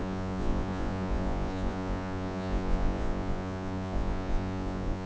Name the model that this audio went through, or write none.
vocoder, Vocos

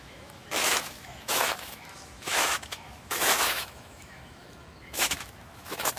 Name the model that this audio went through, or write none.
autoencoder, DAC-VAE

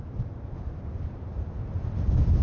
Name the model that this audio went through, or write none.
none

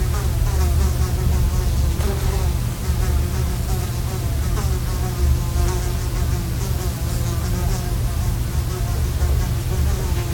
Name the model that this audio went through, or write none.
none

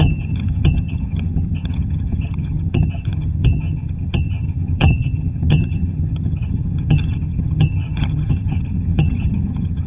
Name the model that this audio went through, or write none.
vocoder, HiFi-GAN